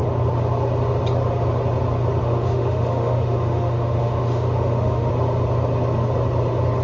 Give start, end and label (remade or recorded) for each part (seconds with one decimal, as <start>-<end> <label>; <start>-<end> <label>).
0.0-2.2 recorded; 2.2-5.1 remade; 5.1-6.8 recorded